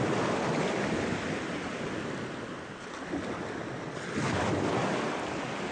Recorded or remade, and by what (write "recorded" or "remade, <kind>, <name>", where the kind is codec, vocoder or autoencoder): recorded